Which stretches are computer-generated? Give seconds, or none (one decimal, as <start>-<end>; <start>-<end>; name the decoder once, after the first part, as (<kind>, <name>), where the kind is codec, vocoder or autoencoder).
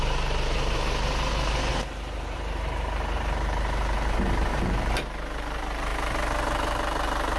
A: 0.0-5.9 (vocoder, BigVGAN v2)